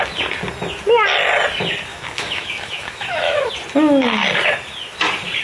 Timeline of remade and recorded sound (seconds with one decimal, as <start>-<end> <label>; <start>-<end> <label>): 0.0-1.9 recorded; 1.9-3.5 remade; 3.5-5.4 recorded